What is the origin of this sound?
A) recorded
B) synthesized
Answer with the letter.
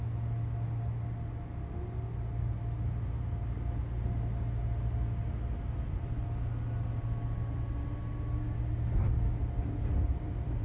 A